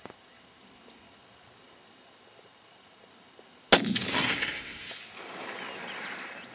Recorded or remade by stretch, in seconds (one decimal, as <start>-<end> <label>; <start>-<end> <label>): 0.0-4.1 recorded; 4.1-4.9 remade; 4.9-6.5 recorded

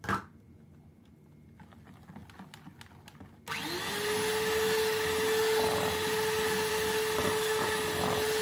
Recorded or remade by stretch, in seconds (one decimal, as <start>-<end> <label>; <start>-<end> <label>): 0.0-8.4 recorded

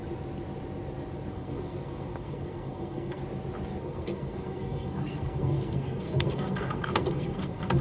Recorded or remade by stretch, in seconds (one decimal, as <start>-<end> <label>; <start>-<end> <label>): 0.0-1.3 recorded; 1.3-3.2 remade; 3.2-3.8 recorded; 3.8-7.8 remade

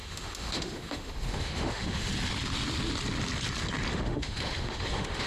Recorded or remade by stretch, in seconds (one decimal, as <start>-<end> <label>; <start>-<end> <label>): 0.0-2.1 remade; 2.1-3.9 recorded; 3.9-5.3 remade

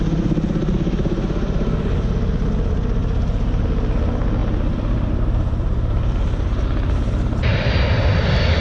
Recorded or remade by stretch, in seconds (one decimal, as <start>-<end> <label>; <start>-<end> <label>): 0.0-0.6 recorded; 0.6-2.1 remade; 2.1-3.0 recorded; 3.0-3.6 remade; 3.6-4.4 recorded; 4.4-8.6 remade